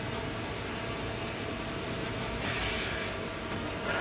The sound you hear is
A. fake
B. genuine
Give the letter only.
B